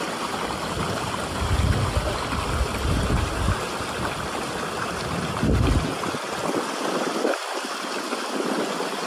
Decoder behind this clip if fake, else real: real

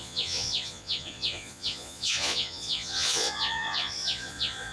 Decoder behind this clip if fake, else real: fake, vocoder, Vocos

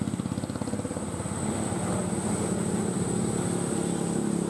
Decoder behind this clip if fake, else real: real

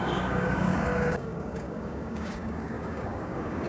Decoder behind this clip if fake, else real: fake, codec, DAC